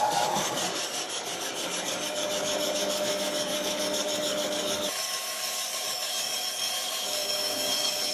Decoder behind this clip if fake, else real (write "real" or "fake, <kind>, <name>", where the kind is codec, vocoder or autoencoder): fake, codec, DAC